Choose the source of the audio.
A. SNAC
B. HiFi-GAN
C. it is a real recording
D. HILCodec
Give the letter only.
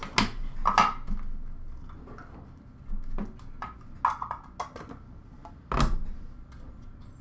C